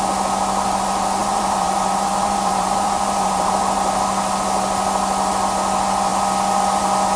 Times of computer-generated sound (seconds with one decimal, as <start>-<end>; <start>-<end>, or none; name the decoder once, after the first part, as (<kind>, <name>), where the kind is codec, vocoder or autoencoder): 1.2-3.5 (vocoder, BigVGAN v2)